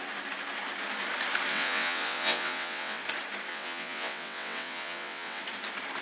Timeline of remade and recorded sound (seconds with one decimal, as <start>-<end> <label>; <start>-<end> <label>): 0.0-1.5 recorded; 1.5-3.0 remade; 3.0-3.5 recorded; 3.5-5.4 remade; 5.4-6.0 recorded